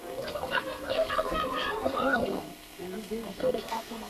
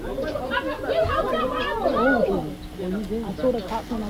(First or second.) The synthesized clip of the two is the first